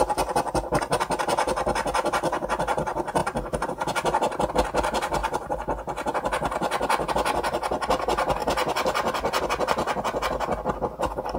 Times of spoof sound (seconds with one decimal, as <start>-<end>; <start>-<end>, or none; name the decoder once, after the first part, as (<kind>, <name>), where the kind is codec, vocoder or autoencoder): 3.2-4.5 (vocoder, BigVGAN v2); 8.4-9.4